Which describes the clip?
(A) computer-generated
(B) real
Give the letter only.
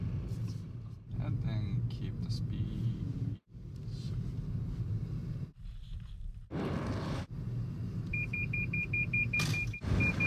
B